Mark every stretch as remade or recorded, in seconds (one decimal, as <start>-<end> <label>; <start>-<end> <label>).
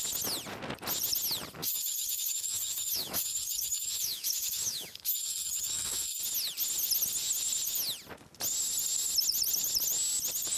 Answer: 0.0-1.6 recorded; 1.6-6.2 remade; 6.2-10.6 recorded